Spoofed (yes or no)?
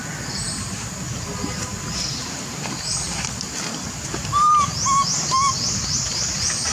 no